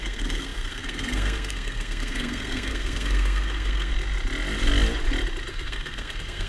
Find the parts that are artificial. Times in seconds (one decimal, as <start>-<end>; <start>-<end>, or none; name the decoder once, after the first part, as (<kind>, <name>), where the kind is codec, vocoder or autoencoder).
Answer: 0.0-3.9 (codec, SNAC); 5.5-6.5